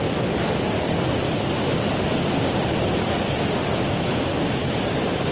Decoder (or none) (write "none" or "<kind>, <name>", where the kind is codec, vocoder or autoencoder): none